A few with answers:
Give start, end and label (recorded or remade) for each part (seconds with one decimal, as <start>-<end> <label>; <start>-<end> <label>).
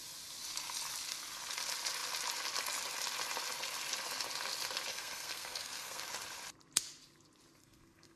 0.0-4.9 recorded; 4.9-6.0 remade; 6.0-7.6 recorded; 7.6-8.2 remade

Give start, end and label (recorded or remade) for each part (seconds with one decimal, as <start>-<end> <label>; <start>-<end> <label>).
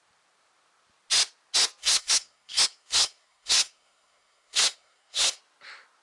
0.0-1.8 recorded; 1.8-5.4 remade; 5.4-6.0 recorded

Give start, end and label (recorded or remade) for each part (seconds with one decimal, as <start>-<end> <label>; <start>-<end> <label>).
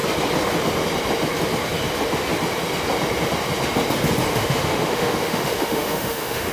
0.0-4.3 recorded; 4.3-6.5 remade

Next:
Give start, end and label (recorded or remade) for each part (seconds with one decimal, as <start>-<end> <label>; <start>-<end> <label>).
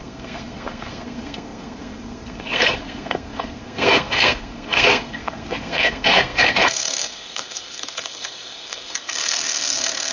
0.0-10.1 remade